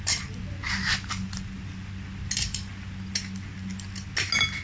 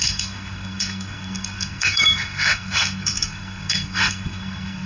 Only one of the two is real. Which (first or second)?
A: first